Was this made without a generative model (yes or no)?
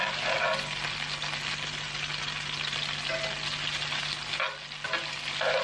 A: yes